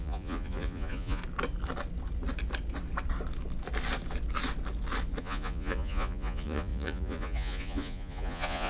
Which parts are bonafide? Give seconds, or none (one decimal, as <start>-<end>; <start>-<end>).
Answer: 1.2-5.2